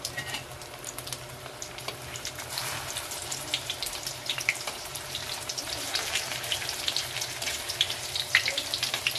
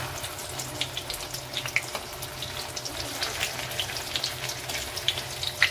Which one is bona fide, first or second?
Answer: second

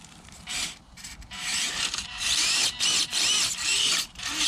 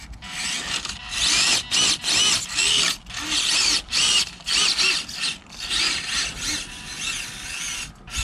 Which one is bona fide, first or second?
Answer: second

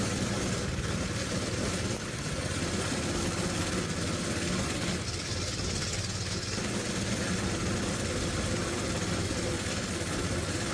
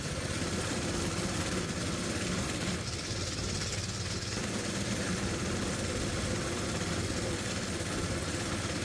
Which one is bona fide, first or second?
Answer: first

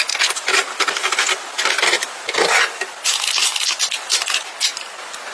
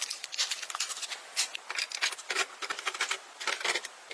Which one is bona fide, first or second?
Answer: first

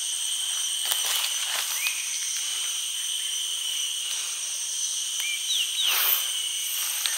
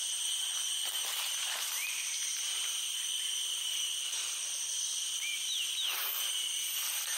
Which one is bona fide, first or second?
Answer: first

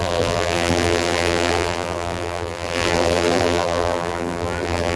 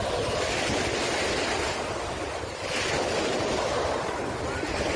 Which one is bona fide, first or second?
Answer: second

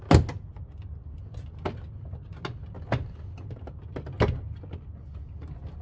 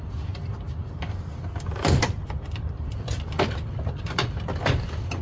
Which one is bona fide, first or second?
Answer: first